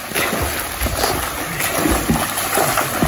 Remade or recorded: recorded